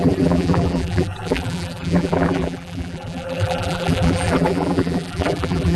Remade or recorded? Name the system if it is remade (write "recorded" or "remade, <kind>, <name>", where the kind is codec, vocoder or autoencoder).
remade, vocoder, BigVGAN v2